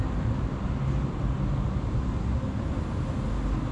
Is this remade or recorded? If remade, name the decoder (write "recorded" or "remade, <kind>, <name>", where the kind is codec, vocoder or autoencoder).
recorded